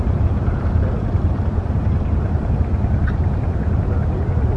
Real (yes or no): no